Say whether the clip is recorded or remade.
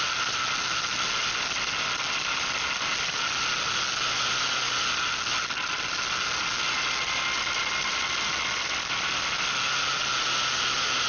recorded